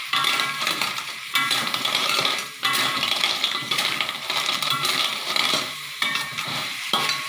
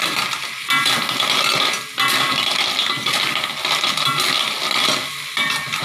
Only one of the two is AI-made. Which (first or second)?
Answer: first